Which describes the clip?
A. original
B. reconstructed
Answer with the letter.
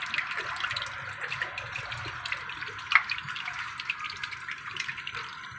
A